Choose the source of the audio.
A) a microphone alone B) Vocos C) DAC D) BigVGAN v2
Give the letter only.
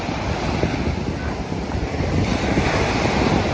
A